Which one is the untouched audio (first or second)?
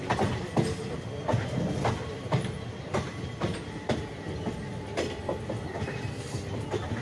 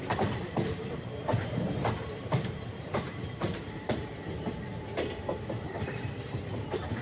first